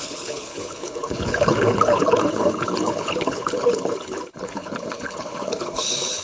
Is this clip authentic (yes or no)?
no